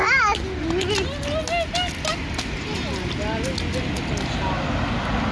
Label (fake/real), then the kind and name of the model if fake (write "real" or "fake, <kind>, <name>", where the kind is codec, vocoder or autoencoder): real